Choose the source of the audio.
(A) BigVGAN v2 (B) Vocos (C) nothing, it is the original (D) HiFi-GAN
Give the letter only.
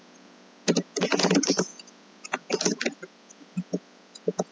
B